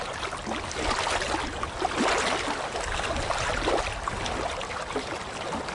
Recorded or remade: recorded